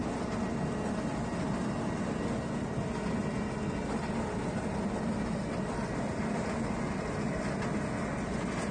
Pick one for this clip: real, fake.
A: real